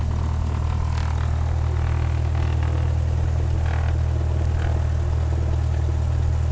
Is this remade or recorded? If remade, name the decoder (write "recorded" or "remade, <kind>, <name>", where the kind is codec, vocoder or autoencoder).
recorded